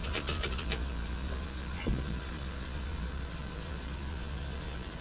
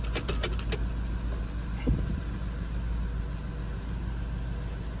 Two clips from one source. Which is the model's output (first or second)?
first